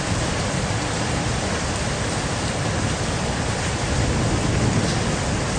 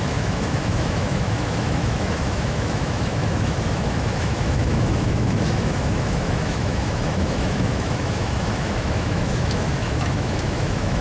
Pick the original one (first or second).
first